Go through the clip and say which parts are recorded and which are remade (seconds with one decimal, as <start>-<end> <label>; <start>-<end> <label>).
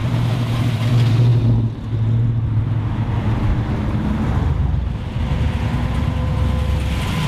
0.0-0.9 remade; 0.9-7.3 recorded